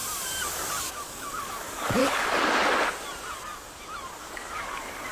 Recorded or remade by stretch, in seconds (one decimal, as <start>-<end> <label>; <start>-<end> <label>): 0.0-0.8 recorded; 0.8-2.0 remade; 2.0-4.2 recorded; 4.2-5.1 remade